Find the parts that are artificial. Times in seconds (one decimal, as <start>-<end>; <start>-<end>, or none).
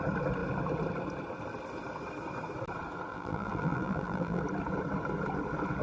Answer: 3.1-4.4